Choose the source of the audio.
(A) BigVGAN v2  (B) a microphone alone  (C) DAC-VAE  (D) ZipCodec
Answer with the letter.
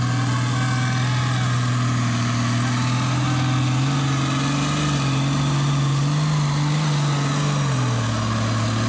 B